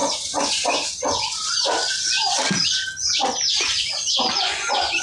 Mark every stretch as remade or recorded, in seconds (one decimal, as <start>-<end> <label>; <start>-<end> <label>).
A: 0.0-1.8 remade; 1.8-4.3 recorded; 4.3-5.0 remade

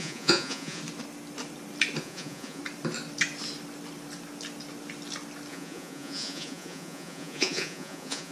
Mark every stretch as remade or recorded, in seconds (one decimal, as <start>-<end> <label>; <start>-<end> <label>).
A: 0.0-0.8 remade; 0.8-2.0 recorded; 2.0-2.6 remade; 2.6-5.5 recorded; 5.5-8.3 remade

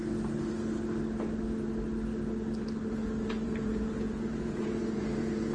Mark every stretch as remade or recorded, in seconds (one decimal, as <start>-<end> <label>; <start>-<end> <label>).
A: 0.0-2.9 recorded; 2.9-5.5 remade